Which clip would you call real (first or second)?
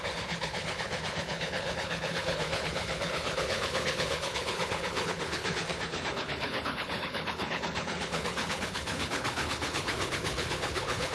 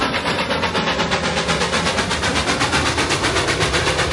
second